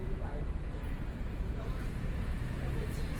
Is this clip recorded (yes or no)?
no